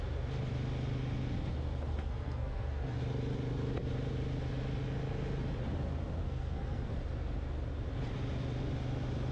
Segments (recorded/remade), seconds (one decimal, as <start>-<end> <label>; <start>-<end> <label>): 0.0-1.9 recorded; 1.9-3.0 remade; 3.0-6.2 recorded; 6.2-6.9 remade; 6.9-9.3 recorded